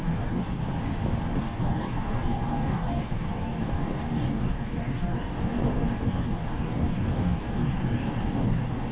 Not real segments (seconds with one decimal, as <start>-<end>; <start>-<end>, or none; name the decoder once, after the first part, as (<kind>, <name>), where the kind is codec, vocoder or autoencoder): 0.0-0.6 (codec, DAC); 1.4-8.9